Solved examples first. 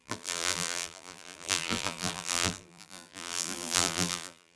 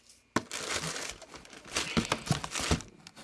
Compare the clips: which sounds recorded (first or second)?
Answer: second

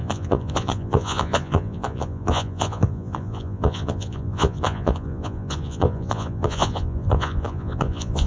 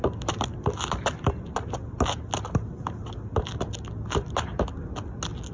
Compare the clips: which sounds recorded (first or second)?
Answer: second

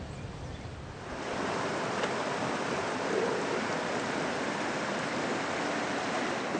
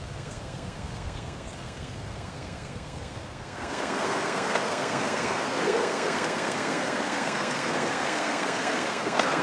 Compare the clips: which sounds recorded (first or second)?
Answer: first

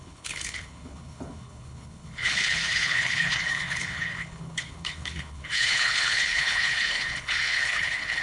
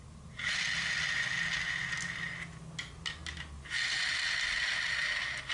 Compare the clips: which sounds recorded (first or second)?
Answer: second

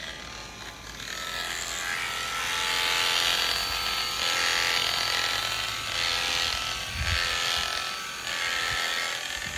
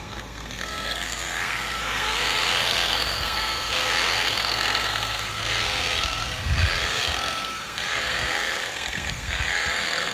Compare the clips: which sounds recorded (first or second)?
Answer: first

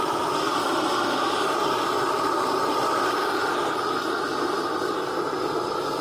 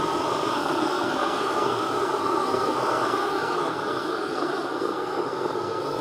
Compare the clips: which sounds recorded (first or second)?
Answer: first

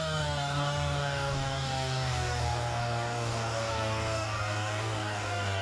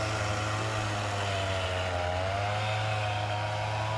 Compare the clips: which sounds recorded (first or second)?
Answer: second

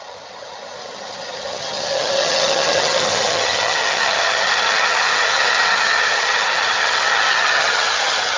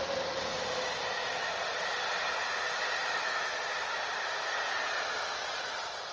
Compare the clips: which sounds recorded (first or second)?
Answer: second